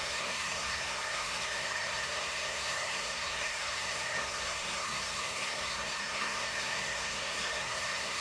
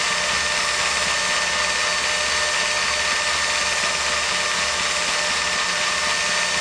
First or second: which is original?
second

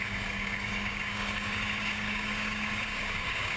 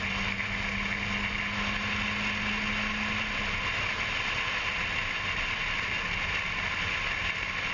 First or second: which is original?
second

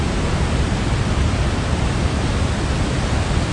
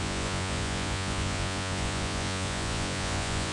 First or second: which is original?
first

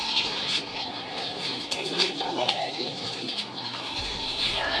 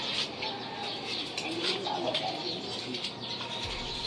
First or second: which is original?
second